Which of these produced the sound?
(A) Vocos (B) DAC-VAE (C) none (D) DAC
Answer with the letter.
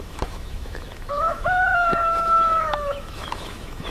B